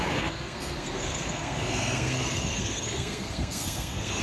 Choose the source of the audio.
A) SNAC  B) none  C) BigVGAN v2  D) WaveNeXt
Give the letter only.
A